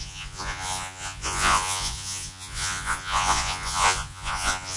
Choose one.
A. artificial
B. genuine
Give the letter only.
A